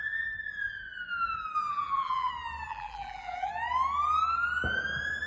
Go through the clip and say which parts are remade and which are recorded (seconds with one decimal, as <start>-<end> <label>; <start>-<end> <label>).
0.0-1.7 recorded; 1.7-2.3 remade; 2.3-2.7 recorded; 2.7-3.5 remade; 3.5-5.3 recorded